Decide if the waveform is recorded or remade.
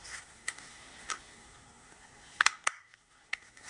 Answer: remade